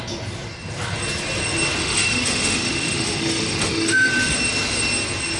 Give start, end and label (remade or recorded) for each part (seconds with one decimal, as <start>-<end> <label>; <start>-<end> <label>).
0.0-1.8 recorded; 1.8-4.1 remade; 4.1-5.4 recorded